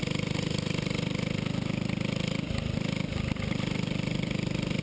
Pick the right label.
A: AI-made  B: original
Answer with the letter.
B